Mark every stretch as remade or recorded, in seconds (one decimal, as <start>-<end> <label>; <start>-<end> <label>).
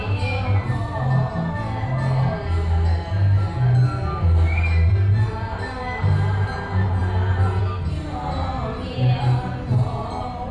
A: 0.0-10.5 recorded